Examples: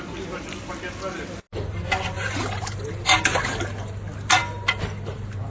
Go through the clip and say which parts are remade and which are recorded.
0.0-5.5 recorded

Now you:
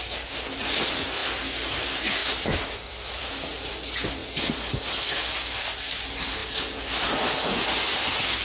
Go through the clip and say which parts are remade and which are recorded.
0.0-2.2 recorded; 2.2-3.3 remade; 3.3-8.4 recorded

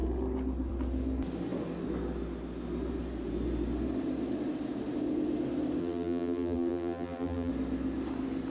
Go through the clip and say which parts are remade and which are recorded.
0.0-5.8 recorded; 5.8-7.5 remade; 7.5-8.5 recorded

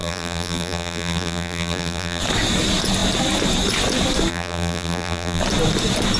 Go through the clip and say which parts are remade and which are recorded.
0.0-2.2 remade; 2.2-4.3 recorded; 4.3-5.4 remade; 5.4-6.2 recorded